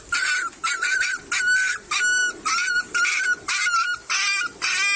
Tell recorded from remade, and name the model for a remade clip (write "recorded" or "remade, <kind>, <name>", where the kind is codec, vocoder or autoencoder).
recorded